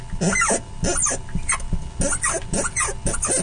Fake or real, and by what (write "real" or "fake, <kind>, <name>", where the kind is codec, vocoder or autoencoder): real